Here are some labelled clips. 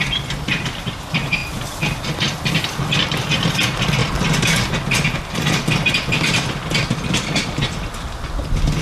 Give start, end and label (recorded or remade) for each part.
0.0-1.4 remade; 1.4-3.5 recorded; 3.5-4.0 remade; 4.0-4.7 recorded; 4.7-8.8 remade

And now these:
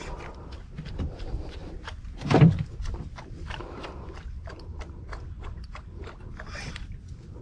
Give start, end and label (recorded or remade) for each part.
0.0-1.6 recorded; 1.6-2.3 remade; 2.3-7.4 recorded

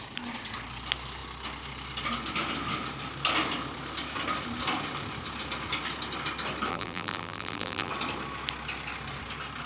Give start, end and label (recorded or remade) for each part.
0.0-6.7 recorded; 6.7-7.9 remade; 7.9-9.7 recorded